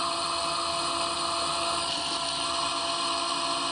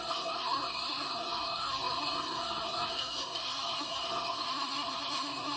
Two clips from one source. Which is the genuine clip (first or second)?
first